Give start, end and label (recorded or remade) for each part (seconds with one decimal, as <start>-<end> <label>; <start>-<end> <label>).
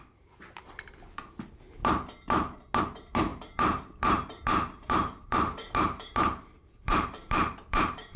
0.0-1.8 remade; 1.8-2.8 recorded; 2.8-8.2 remade